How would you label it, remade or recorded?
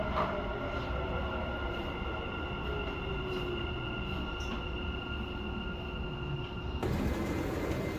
recorded